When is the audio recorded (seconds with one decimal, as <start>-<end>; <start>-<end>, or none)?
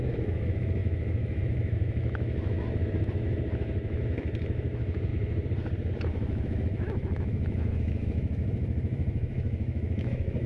5.1-6.1